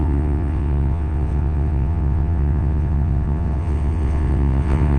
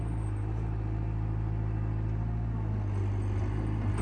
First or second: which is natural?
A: second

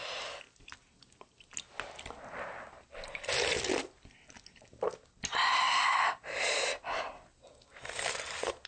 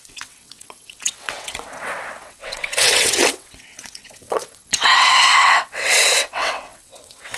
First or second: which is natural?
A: first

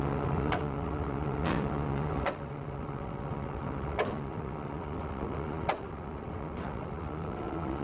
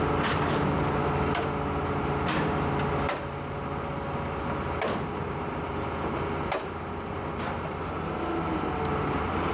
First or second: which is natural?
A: second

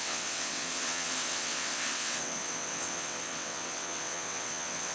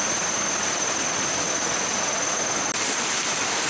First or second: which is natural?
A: second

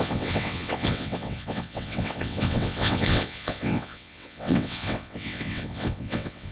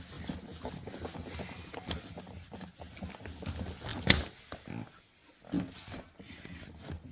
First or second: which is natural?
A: second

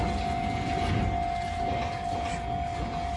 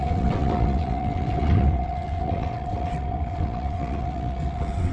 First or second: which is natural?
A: first